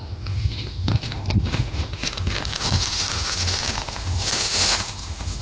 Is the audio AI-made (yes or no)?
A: yes